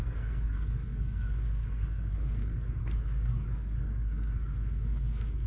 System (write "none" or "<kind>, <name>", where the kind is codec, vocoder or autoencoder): codec, SNAC